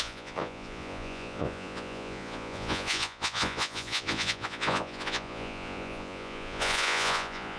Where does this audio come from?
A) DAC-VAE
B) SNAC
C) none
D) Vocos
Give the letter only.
D